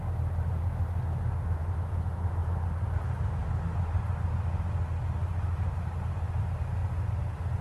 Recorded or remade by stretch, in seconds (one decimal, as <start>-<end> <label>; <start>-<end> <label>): 0.0-1.6 recorded; 1.6-2.6 remade; 2.6-7.6 recorded